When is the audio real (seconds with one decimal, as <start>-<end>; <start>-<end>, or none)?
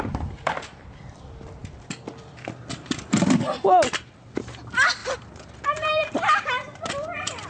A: none